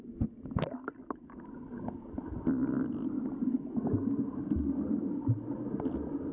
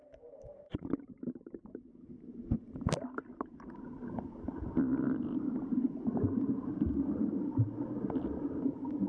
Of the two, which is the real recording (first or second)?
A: first